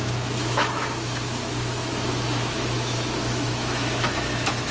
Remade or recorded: remade